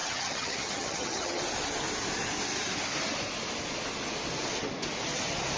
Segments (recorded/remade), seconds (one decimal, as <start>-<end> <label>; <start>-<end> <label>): 0.0-1.4 remade; 1.4-5.6 recorded